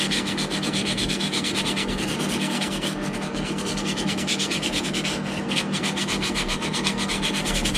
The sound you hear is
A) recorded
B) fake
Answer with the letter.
B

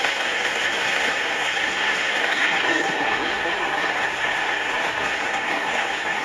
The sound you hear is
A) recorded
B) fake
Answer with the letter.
B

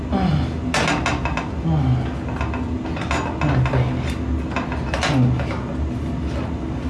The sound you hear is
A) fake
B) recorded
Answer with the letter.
B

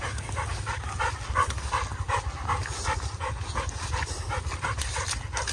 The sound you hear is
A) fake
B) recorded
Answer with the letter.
B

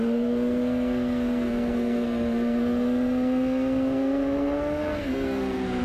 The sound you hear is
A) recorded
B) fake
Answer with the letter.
B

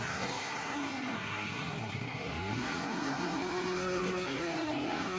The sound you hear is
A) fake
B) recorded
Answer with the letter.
A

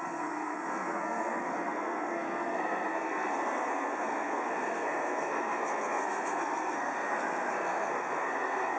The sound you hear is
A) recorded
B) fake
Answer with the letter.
B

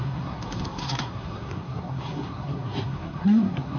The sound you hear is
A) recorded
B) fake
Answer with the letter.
B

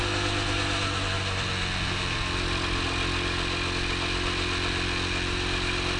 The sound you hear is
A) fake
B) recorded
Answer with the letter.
B